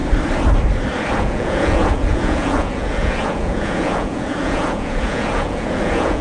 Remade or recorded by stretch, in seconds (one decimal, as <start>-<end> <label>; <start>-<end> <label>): 0.0-1.1 recorded; 1.1-6.2 remade